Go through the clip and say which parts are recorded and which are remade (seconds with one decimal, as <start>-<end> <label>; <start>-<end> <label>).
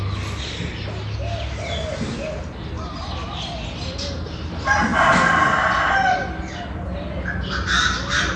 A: 0.0-8.4 recorded